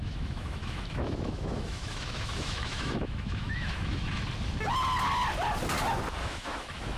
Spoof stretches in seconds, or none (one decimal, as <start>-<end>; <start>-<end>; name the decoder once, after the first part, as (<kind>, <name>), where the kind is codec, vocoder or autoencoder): 0.0-4.2 (autoencoder, DAC-VAE); 6.2-7.0

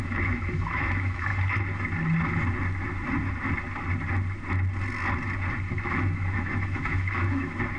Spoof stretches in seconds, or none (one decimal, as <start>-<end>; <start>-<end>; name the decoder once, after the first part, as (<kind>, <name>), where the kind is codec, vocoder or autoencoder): 0.0-1.3 (autoencoder, DAC-VAE); 5.9-7.8

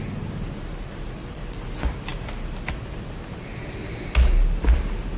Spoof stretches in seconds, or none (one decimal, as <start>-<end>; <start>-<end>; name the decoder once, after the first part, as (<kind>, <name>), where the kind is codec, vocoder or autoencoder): none

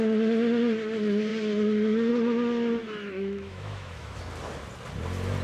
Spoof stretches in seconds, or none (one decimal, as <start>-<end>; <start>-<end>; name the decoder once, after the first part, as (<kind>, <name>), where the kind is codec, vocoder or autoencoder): 2.8-4.2 (autoencoder, DAC-VAE)

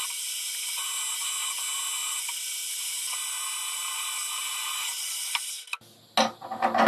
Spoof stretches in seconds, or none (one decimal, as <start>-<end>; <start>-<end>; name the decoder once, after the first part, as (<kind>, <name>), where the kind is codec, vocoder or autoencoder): none

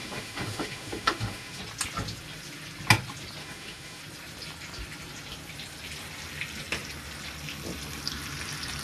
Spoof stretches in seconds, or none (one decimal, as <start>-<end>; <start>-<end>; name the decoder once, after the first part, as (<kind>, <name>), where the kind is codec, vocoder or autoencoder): 0.0-1.6 (autoencoder, DAC-VAE); 3.4-4.0